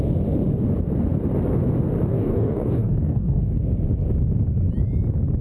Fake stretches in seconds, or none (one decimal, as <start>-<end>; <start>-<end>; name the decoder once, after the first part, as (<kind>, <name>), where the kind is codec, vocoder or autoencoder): 2.1-3.6 (codec, DAC)